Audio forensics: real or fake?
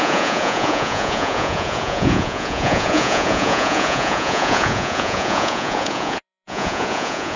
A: fake